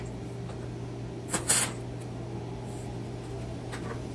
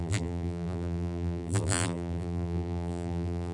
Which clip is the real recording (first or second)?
first